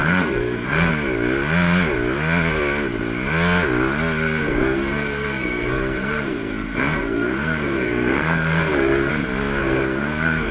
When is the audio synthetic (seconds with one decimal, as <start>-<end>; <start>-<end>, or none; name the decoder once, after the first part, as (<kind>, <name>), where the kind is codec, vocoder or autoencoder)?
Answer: 0.0-0.9 (codec, SNAC); 4.4-9.1; 9.6-10.5